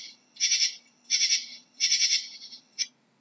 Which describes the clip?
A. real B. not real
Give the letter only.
A